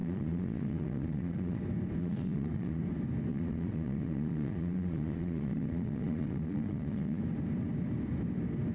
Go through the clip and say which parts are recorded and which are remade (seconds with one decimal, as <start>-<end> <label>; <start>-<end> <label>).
0.0-1.6 remade; 1.6-2.0 recorded; 2.0-2.8 remade; 2.8-3.3 recorded; 3.3-7.2 remade; 7.2-8.7 recorded